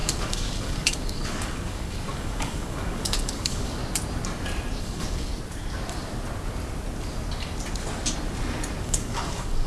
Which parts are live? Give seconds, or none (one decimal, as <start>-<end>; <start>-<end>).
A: 3.8-4.8; 5.3-8.8